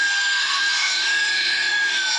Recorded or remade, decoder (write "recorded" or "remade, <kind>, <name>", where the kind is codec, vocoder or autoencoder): remade, autoencoder, DAC-VAE